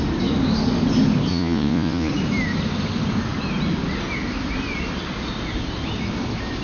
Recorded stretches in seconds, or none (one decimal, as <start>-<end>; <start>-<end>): 0.0-1.3; 2.1-6.6